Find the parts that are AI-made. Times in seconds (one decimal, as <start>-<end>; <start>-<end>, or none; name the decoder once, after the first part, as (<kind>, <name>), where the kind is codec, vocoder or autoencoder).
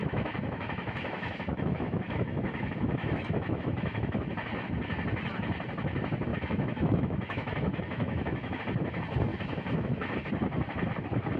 0.0-4.3 (autoencoder, DAC-VAE); 6.3-8.6; 9.3-10.1